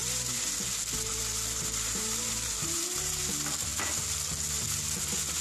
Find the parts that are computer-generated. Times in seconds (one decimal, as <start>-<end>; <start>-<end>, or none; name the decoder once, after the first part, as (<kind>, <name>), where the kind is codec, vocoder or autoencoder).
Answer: 0.0-0.6 (vocoder, BigVGAN v2); 1.1-3.2